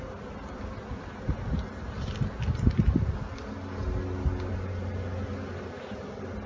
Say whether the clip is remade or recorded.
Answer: recorded